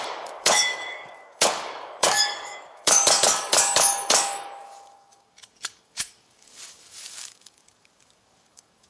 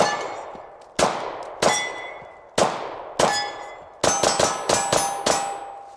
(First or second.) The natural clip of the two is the second